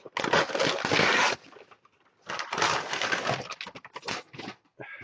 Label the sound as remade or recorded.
recorded